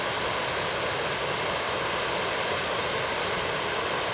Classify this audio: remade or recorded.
recorded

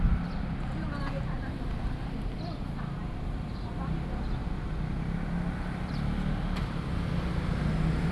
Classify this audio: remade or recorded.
recorded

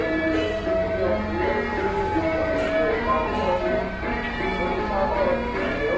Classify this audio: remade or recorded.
recorded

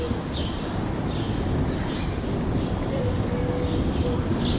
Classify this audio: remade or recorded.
recorded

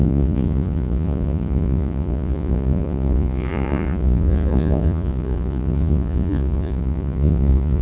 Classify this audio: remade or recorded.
remade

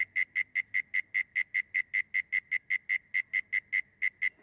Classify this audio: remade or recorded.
recorded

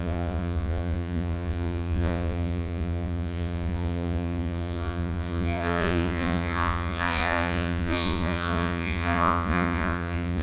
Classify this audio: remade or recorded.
remade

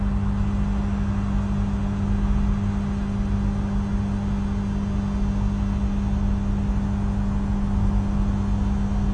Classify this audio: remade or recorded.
recorded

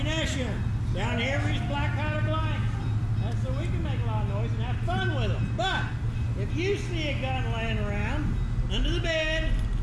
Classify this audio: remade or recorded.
recorded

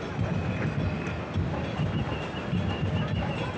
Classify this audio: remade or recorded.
recorded